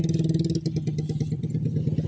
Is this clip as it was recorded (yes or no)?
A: yes